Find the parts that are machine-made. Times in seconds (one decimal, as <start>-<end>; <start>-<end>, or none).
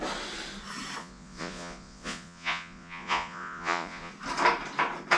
1.0-4.1